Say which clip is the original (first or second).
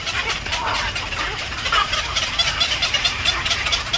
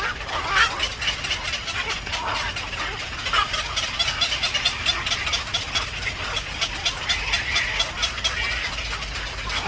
second